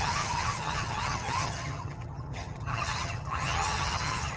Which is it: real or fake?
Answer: fake